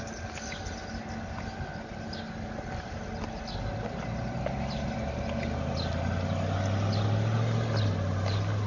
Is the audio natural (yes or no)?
yes